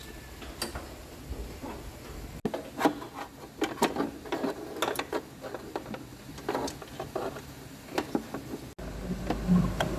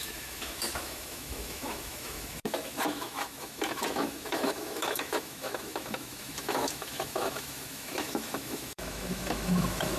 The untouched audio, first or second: first